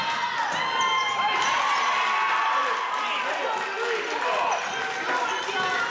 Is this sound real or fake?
real